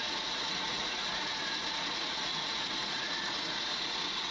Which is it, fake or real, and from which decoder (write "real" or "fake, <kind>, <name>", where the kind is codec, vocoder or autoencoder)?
fake, vocoder, Vocos